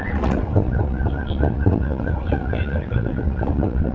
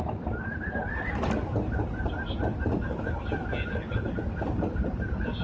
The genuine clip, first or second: second